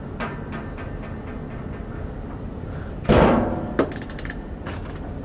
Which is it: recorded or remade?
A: recorded